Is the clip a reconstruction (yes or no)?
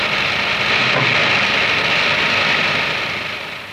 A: no